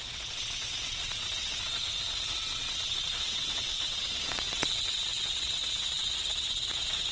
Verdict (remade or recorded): remade